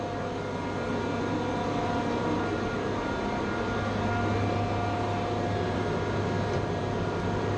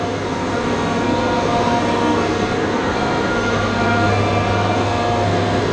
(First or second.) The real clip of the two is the first